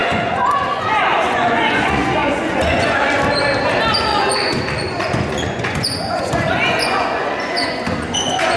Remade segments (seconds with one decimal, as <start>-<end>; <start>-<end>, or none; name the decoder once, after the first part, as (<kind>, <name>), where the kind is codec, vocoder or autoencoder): 0.0-3.0 (vocoder, Vocos); 4.1-8.6